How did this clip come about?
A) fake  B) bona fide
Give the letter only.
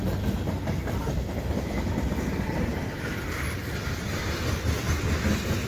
B